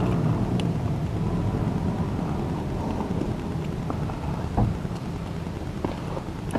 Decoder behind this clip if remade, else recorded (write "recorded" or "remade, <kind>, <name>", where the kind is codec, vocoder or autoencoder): recorded